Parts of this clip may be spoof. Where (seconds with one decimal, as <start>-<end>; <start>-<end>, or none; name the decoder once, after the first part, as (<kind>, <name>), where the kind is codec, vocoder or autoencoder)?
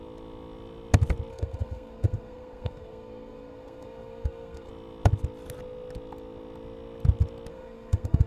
1.3-4.7 (codec, SNAC); 7.5-8.3